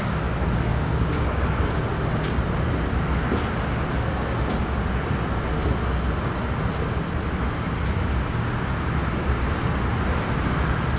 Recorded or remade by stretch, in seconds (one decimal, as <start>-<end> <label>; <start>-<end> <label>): 0.0-0.7 recorded; 0.7-1.4 remade; 1.4-11.0 recorded